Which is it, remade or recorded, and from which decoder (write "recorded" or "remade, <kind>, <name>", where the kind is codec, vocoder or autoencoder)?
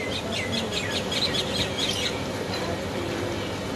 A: recorded